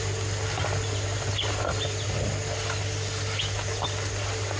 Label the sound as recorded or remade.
recorded